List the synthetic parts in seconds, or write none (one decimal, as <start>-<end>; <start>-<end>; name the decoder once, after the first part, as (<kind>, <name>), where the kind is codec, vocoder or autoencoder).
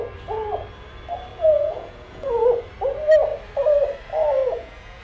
1.3-2.3 (vocoder, Vocos); 4.4-5.0